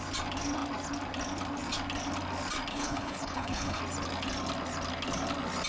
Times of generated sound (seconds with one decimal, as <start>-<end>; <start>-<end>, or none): 2.7-3.8